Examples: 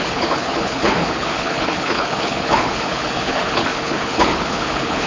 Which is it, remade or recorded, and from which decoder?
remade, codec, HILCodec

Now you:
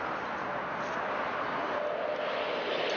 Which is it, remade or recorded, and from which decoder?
recorded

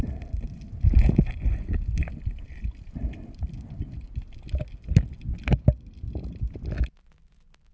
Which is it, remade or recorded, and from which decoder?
recorded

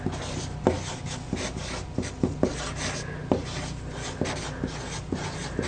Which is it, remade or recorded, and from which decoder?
recorded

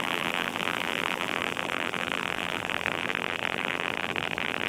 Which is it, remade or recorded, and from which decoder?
remade, vocoder, BigVGAN v2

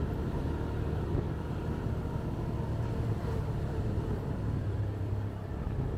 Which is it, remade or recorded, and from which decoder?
recorded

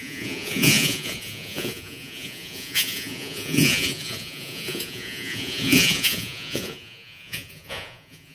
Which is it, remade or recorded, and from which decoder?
remade, vocoder, Vocos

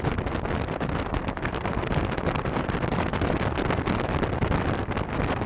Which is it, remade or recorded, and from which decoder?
recorded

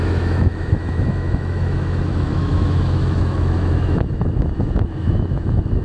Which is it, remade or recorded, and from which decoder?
remade, autoencoder, DAC-VAE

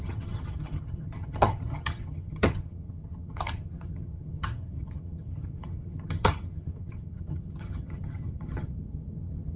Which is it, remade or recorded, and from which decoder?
remade, vocoder, HiFi-GAN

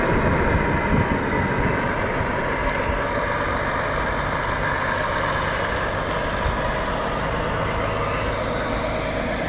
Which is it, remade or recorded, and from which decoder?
recorded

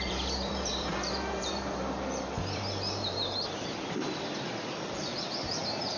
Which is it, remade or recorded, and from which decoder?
remade, vocoder, BigVGAN v2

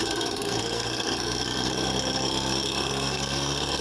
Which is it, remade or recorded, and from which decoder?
remade, codec, SNAC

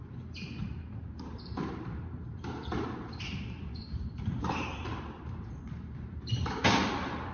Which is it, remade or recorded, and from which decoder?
remade, vocoder, BigVGAN v2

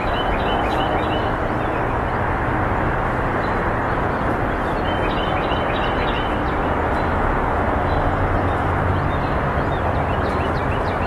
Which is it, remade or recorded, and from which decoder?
recorded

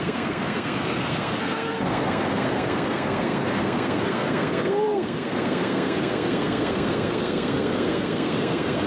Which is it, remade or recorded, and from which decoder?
remade, codec, SNAC